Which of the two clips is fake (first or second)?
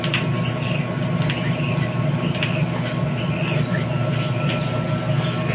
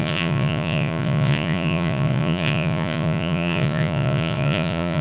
second